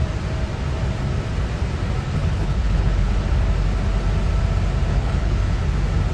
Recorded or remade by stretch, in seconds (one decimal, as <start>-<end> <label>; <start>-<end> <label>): 0.0-2.2 recorded; 2.2-3.1 remade; 3.1-4.9 recorded; 4.9-5.6 remade; 5.6-6.1 recorded